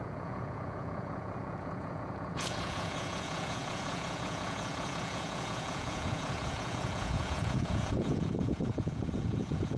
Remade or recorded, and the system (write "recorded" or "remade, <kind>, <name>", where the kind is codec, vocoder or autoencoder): remade, vocoder, Vocos